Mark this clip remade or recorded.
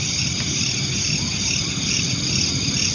recorded